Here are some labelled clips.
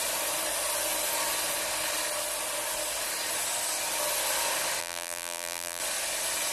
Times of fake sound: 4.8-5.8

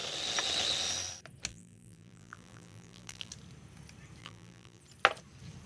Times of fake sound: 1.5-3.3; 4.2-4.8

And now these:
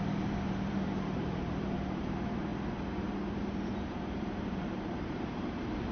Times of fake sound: 0.0-2.5; 3.3-5.9

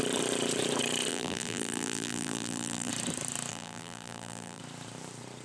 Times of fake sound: 1.1-2.9; 3.5-4.6

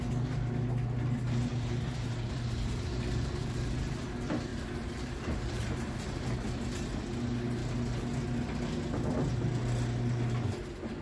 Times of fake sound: 1.5-3.8; 4.5-6.0

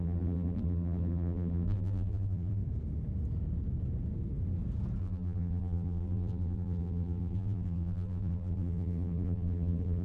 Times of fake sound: 0.0-2.6; 5.0-10.0